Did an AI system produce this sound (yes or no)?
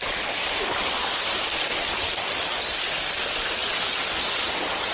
yes